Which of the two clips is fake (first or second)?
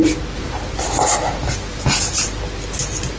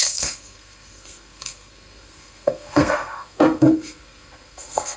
second